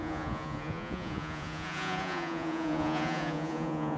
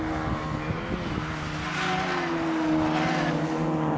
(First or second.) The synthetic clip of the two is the first